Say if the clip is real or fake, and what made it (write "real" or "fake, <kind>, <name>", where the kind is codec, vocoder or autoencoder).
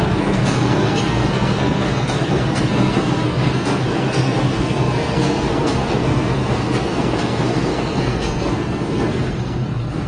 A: fake, codec, SNAC